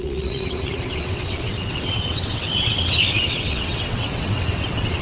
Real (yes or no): no